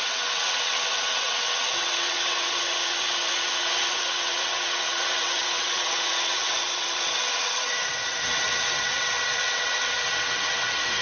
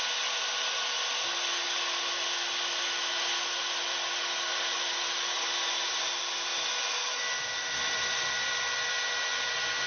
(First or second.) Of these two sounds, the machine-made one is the first